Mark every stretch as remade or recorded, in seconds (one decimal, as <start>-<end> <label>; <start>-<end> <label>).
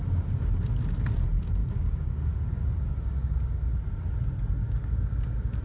0.0-1.6 recorded; 1.6-3.8 remade; 3.8-4.6 recorded; 4.6-5.6 remade